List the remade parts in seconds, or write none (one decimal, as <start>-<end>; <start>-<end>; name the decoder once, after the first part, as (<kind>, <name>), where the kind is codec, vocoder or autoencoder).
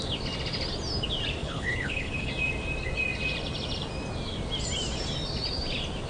1.4-2.3 (codec, HILCodec)